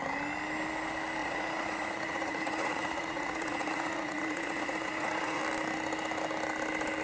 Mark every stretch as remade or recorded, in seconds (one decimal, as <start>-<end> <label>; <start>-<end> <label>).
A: 0.0-1.2 recorded; 1.2-5.4 remade; 5.4-7.0 recorded